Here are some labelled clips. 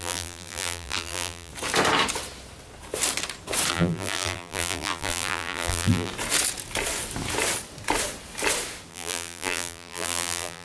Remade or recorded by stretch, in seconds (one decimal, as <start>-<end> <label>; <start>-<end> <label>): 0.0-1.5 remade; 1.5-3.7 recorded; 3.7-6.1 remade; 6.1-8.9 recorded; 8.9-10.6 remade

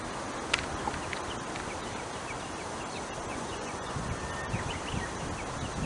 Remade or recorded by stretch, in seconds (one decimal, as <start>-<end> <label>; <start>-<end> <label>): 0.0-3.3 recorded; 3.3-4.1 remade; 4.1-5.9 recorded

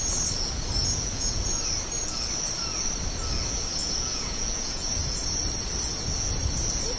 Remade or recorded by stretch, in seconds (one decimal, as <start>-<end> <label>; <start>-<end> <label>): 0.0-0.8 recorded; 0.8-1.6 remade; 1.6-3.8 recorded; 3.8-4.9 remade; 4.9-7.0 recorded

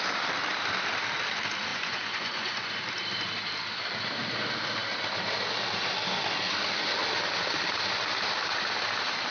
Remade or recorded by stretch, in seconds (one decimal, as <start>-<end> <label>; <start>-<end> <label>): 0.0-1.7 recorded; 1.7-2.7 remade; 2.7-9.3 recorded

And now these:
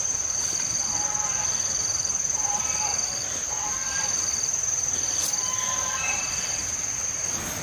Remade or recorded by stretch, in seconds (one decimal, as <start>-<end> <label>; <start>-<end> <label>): 0.0-7.6 recorded